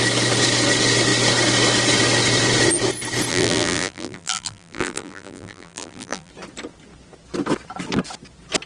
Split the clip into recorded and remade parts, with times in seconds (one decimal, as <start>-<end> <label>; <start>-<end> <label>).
0.0-3.3 recorded; 3.3-6.3 remade; 6.3-8.7 recorded